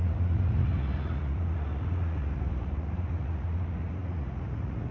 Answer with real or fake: fake